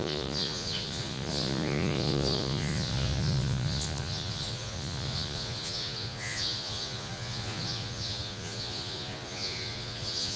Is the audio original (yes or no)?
no